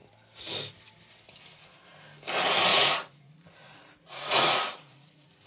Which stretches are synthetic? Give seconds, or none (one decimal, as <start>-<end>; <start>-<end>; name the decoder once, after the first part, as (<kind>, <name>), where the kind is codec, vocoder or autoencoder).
2.7-5.5 (vocoder, Vocos)